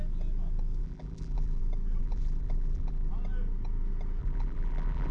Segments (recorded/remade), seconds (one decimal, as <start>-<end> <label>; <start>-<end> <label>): 0.0-0.8 recorded; 0.8-1.6 remade; 1.6-2.0 recorded; 2.0-3.1 remade; 3.1-4.2 recorded; 4.2-5.1 remade